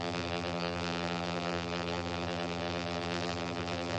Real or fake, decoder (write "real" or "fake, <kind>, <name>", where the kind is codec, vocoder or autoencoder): fake, vocoder, BigVGAN v2